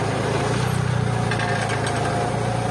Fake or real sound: real